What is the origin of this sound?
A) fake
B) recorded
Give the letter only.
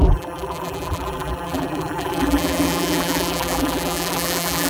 A